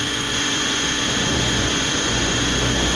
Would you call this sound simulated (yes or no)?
yes